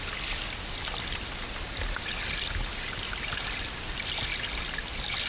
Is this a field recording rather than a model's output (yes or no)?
yes